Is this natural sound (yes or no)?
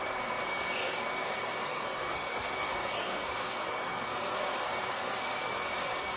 no